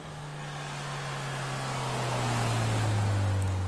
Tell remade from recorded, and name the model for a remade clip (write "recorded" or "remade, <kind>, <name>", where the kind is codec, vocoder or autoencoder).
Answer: recorded